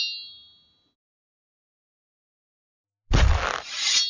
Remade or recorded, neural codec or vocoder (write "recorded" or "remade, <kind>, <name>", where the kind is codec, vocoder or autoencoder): recorded